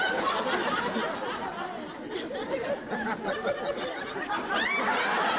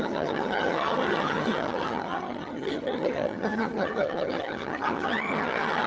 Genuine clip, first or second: first